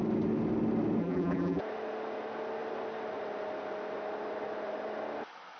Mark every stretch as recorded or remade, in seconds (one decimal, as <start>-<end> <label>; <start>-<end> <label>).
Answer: 0.0-1.0 recorded; 1.0-1.6 remade; 1.6-5.6 recorded